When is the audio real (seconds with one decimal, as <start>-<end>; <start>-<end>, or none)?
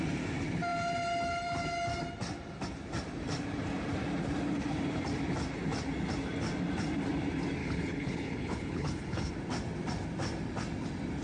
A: 0.0-7.6; 9.3-11.2